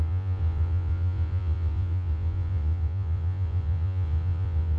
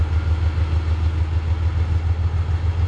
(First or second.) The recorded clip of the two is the second